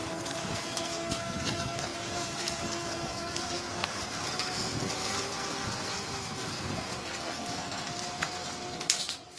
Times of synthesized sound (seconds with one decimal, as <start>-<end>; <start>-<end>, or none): 0.0-9.4